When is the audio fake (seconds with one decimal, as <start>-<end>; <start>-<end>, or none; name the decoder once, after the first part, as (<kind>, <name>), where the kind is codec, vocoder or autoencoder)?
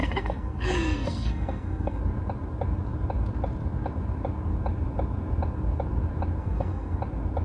0.0-2.0 (codec, SNAC); 6.4-7.0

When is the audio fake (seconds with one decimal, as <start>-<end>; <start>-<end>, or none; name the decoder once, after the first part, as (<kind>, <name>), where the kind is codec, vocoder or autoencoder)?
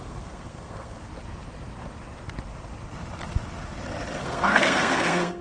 0.0-1.0 (codec, SNAC); 4.2-5.4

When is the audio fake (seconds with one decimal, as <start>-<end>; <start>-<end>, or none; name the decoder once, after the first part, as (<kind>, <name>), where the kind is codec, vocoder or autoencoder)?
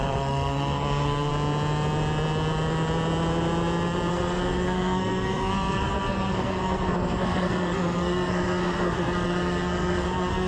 0.0-1.3 (codec, SNAC); 4.1-10.5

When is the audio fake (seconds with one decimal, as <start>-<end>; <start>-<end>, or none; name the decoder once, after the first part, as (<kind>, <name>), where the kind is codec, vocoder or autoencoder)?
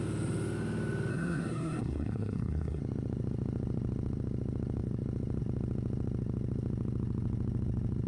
1.1-2.8 (codec, SNAC)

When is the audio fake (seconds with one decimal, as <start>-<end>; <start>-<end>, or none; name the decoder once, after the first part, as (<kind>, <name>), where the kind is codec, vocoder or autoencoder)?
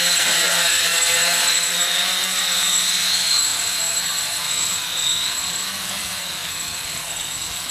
0.0-7.7 (codec, SNAC)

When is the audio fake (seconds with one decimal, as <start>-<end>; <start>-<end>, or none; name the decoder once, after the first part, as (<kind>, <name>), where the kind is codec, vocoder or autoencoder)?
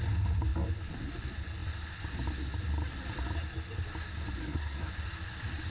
4.4-4.9 (codec, SNAC)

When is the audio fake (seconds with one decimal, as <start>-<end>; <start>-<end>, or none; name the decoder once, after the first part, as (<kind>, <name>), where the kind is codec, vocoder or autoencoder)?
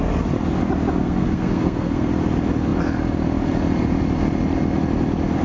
1.0-2.1 (codec, SNAC)